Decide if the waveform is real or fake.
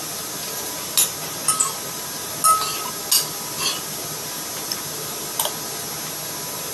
real